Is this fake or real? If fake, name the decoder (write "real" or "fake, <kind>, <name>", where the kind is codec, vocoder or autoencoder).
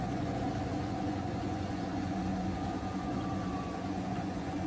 fake, vocoder, Vocos